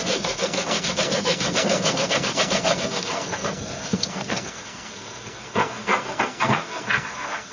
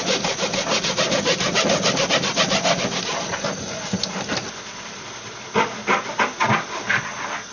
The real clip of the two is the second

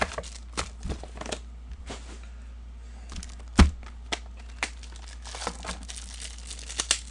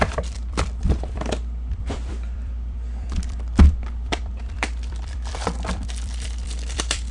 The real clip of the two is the first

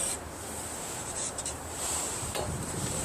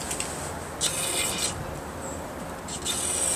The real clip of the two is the second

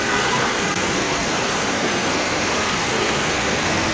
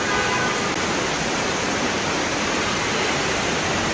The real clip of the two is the second